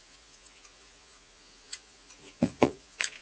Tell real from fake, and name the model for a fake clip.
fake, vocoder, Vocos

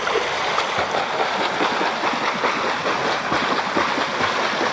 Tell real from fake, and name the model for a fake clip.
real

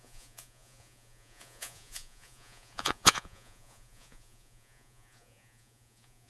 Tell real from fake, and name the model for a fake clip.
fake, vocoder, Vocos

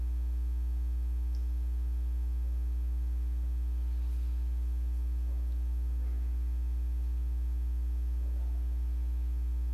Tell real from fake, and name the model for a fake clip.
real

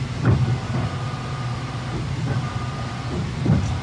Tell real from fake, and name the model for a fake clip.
real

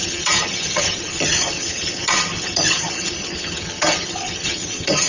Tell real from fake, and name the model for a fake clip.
fake, vocoder, HiFi-GAN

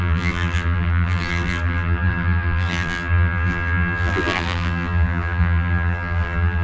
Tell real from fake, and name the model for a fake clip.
fake, vocoder, BigVGAN v2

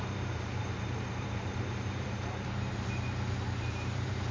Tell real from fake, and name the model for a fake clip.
fake, vocoder, BigVGAN v2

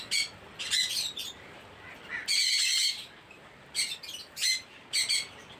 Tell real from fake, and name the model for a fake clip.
real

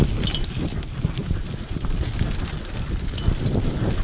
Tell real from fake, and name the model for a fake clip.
real